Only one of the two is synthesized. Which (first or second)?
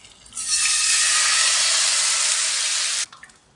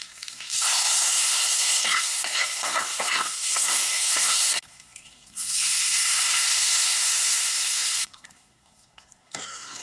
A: second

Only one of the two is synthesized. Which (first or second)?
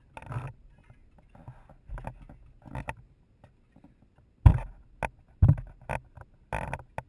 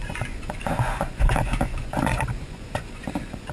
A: second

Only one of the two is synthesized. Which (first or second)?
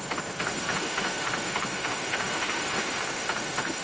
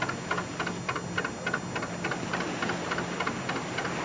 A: first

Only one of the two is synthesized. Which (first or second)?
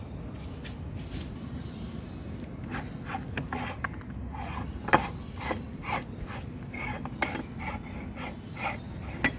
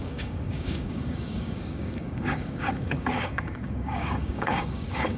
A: second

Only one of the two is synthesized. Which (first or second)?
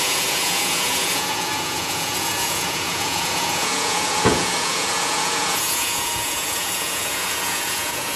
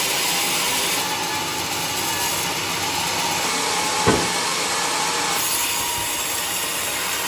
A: first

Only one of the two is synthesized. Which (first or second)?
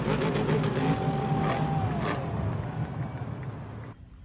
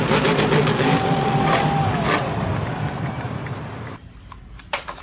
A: second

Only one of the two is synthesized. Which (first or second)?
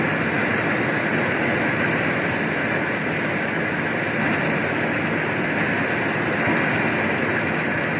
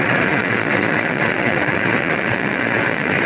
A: second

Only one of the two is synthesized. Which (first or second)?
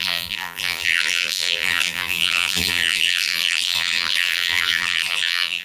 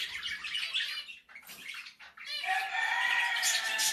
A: first